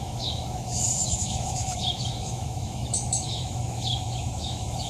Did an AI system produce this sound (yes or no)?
yes